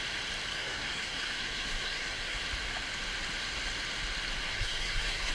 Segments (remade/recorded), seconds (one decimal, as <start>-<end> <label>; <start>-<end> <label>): 0.0-0.5 recorded; 0.5-2.4 remade; 2.4-4.5 recorded; 4.5-5.3 remade